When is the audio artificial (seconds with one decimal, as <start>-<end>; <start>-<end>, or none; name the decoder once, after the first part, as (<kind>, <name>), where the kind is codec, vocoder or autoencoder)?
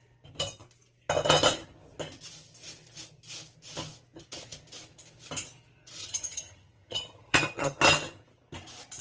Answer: 6.0-7.8 (vocoder, HiFi-GAN)